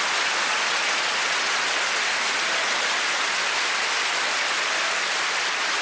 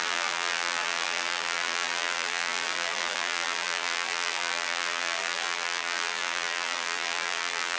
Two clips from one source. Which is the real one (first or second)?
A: first